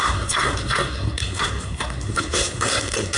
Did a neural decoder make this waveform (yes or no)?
yes